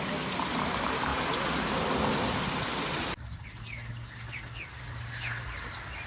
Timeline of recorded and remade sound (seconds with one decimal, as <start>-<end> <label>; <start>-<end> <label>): 0.0-6.1 recorded